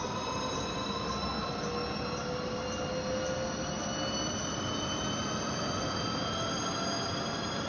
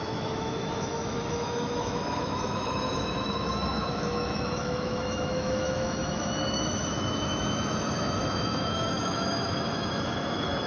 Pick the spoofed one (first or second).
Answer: second